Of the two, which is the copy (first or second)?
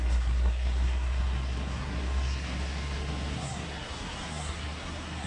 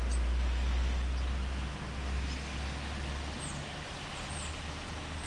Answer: first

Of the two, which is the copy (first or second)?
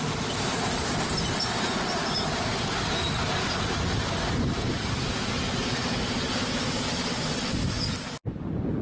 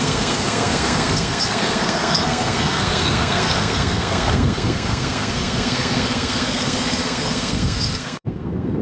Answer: second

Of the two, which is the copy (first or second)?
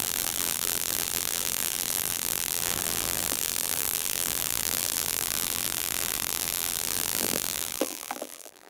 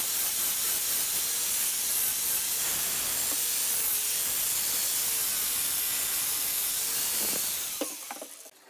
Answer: first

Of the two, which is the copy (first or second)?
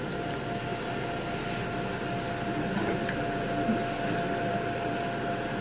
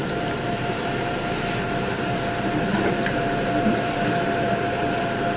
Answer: second